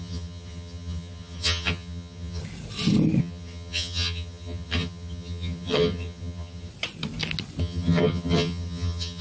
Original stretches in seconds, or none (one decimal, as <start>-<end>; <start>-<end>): 2.4-3.2; 6.7-7.6